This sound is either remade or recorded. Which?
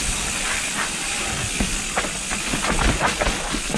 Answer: recorded